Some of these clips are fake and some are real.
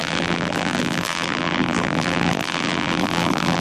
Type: fake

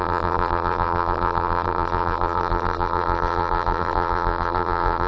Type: fake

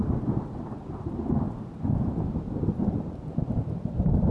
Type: fake